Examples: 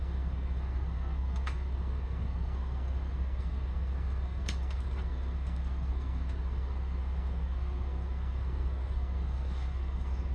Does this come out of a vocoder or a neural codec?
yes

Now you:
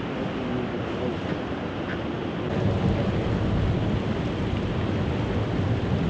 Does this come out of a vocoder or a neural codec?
no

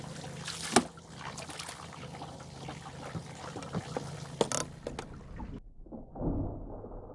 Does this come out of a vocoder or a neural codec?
no